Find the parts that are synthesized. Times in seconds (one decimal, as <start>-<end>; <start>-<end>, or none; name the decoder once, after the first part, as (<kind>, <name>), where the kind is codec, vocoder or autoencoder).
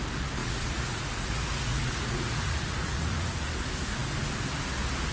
0.4-3.5 (vocoder, Vocos)